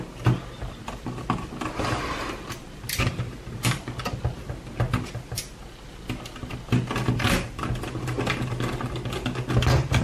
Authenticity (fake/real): real